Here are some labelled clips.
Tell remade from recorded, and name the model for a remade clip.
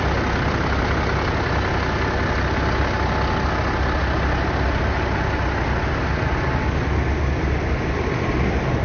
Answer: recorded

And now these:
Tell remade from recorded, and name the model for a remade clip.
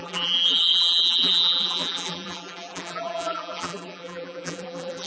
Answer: remade, vocoder, BigVGAN v2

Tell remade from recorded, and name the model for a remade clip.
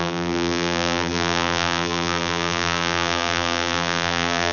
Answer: remade, vocoder, BigVGAN v2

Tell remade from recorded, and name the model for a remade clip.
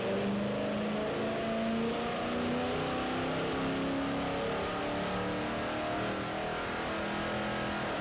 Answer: recorded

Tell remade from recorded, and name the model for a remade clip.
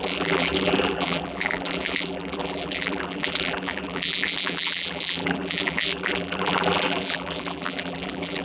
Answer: remade, vocoder, BigVGAN v2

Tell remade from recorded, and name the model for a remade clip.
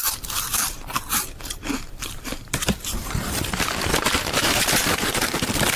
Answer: remade, vocoder, BigVGAN v2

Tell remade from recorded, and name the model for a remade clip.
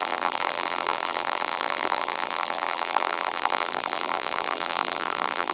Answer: remade, vocoder, BigVGAN v2